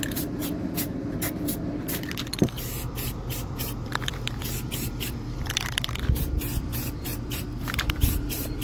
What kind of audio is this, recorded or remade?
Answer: remade